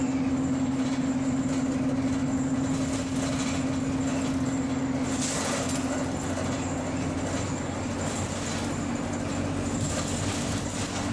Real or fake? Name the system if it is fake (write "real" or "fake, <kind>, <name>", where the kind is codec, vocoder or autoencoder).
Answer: real